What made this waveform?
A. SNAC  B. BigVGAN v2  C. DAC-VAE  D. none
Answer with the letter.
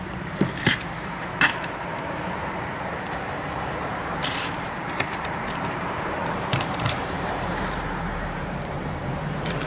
B